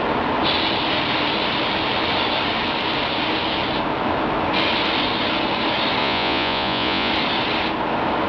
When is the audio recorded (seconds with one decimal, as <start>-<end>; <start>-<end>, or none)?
0.0-6.0; 7.1-8.3

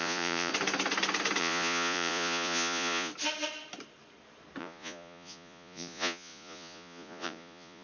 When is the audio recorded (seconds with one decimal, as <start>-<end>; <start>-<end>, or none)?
0.5-1.4; 3.1-4.6

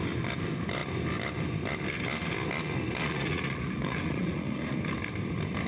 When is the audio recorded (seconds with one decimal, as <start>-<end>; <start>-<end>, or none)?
0.0-3.0; 4.8-5.7